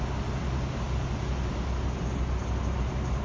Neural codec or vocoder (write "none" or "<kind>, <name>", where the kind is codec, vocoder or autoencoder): none